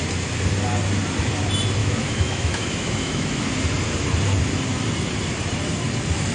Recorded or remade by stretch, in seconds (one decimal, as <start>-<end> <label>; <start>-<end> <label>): 0.0-1.8 recorded; 1.8-3.5 remade; 3.5-6.3 recorded